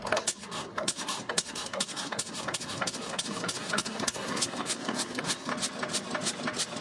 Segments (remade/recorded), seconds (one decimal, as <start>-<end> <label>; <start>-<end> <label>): 0.0-5.5 remade; 5.5-6.8 recorded